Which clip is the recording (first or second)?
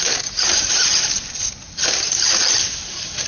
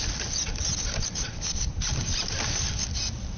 second